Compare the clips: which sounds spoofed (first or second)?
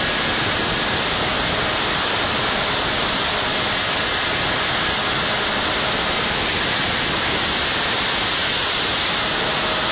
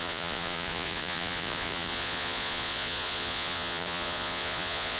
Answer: second